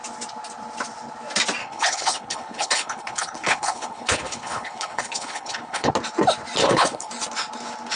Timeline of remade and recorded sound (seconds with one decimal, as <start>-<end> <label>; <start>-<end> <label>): 0.0-1.6 recorded; 1.6-5.9 remade; 5.9-6.6 recorded; 6.6-7.1 remade; 7.1-8.0 recorded